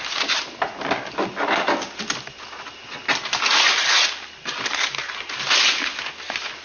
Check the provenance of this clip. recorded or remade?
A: recorded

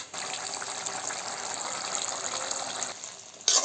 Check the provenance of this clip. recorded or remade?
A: recorded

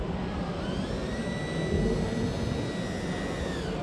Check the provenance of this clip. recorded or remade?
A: recorded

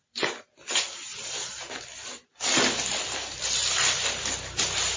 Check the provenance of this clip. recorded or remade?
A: remade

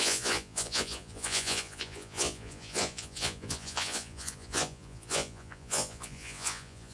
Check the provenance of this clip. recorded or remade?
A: remade